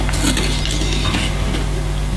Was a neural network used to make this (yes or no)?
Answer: no